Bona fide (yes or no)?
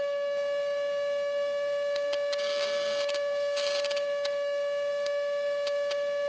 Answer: no